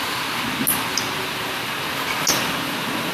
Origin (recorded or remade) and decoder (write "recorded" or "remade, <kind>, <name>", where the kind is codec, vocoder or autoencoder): recorded